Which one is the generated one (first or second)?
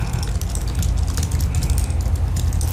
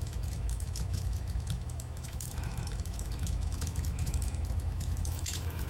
second